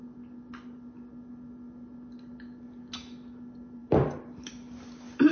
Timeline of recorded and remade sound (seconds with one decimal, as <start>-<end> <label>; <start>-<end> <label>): 0.0-3.8 recorded; 3.8-4.5 remade; 4.5-5.3 recorded